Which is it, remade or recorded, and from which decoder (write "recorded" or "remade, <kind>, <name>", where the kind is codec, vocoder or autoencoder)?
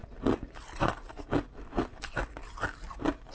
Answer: recorded